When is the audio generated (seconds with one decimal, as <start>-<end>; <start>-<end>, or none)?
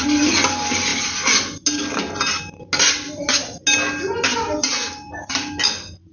none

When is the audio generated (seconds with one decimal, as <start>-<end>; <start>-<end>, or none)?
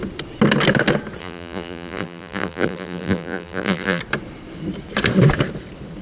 1.2-4.0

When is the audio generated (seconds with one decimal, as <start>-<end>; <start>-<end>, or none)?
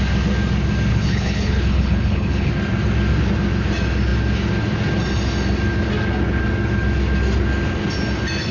0.9-2.5